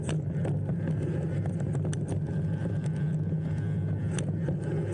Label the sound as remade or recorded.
recorded